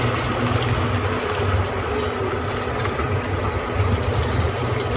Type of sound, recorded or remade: recorded